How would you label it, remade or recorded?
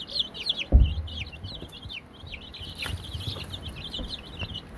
recorded